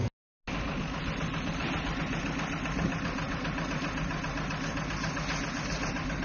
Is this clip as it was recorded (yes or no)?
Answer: yes